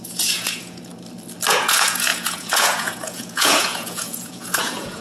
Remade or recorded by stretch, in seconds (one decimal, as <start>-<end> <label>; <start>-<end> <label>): 0.0-0.9 remade; 0.9-1.5 recorded; 1.5-5.0 remade